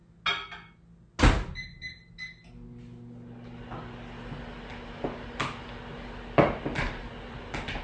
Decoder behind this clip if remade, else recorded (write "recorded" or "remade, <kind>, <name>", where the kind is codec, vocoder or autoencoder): recorded